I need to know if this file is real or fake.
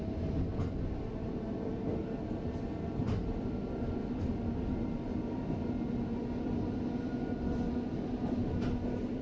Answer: real